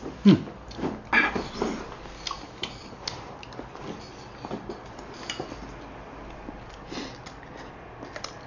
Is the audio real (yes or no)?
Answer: yes